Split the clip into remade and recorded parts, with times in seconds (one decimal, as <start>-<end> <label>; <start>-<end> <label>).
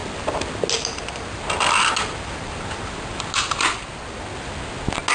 0.0-5.1 recorded